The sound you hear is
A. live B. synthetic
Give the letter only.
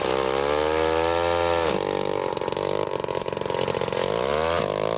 A